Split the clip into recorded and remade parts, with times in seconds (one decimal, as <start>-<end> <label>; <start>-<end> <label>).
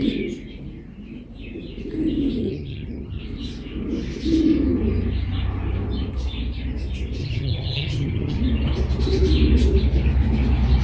0.0-2.4 recorded; 2.4-3.2 remade; 3.2-7.2 recorded; 7.2-8.4 remade; 8.4-10.8 recorded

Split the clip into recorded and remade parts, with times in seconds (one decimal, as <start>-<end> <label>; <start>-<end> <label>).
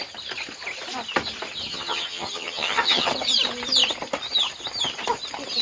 0.0-1.7 recorded; 1.7-3.1 remade; 3.1-5.6 recorded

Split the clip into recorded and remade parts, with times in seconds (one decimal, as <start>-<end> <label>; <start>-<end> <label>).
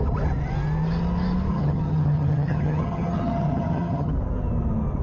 0.0-1.5 recorded; 1.5-4.1 remade; 4.1-5.0 recorded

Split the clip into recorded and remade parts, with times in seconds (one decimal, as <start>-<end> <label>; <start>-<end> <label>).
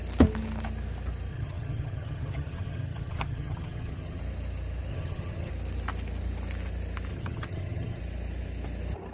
0.0-1.3 recorded; 1.3-4.2 remade; 4.2-4.9 recorded; 4.9-5.5 remade; 5.5-7.1 recorded; 7.1-8.0 remade; 8.0-9.1 recorded